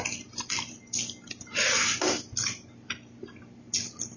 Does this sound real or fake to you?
real